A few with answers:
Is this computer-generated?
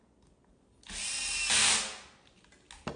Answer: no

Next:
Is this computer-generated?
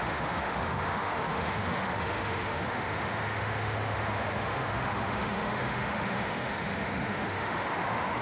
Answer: yes